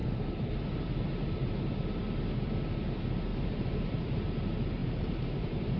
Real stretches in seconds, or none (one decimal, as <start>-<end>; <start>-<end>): 2.0-3.3; 4.3-4.8